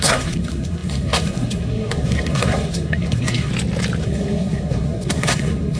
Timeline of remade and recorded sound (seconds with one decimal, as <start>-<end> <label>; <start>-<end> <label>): 0.0-3.5 remade; 3.5-4.0 recorded; 4.0-5.8 remade